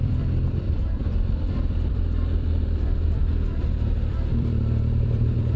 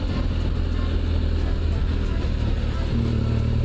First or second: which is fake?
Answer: first